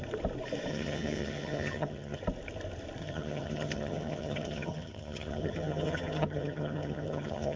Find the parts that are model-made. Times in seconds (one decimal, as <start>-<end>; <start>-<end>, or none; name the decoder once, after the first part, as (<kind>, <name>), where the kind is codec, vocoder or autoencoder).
0.7-2.2 (vocoder, HiFi-GAN); 3.0-7.6